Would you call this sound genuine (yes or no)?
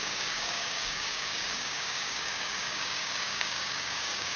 no